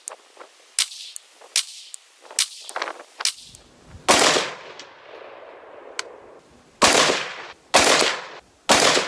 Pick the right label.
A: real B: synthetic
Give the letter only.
A